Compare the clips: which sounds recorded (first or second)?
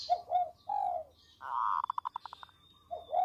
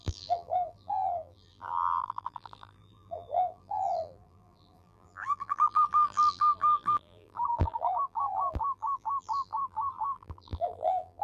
first